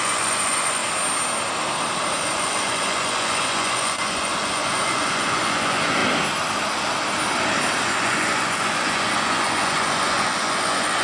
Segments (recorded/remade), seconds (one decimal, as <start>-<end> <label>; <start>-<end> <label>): 0.0-0.8 remade; 0.8-2.1 recorded; 2.1-6.0 remade; 6.0-7.8 recorded; 7.8-11.0 remade